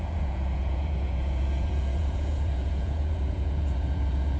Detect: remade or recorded remade